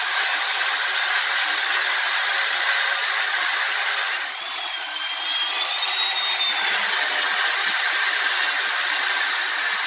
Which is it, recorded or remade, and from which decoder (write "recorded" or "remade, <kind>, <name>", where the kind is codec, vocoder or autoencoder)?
recorded